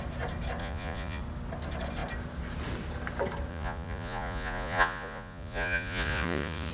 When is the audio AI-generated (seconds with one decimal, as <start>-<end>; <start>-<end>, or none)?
0.6-1.2; 3.5-6.7